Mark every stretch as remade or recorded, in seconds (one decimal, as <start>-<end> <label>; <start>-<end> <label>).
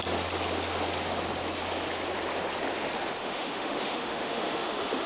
0.0-3.2 recorded; 3.2-5.1 remade